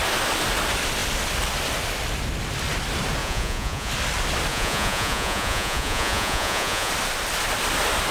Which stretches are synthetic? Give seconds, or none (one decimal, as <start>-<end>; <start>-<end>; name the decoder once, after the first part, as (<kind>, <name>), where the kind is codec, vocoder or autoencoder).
3.2-3.9 (vocoder, Vocos); 4.5-6.9